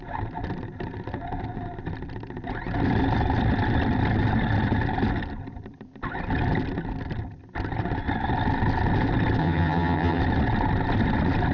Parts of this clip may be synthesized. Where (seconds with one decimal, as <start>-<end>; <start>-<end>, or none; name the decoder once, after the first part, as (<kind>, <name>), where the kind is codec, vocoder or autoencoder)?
9.4-10.2 (vocoder, HiFi-GAN)